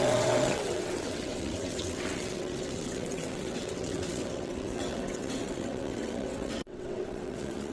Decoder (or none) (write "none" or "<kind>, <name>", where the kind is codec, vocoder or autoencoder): vocoder, WaveNeXt